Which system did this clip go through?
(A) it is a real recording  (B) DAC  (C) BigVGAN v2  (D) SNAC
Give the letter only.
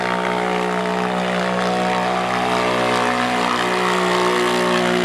A